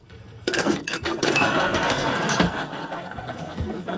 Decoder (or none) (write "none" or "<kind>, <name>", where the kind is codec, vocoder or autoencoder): codec, SNAC